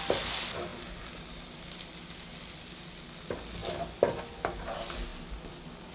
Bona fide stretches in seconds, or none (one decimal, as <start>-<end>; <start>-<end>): 0.0-5.9